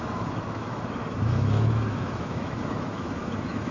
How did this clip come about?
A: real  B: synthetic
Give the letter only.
B